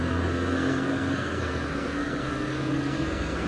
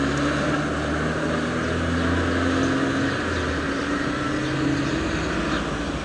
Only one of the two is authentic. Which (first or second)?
second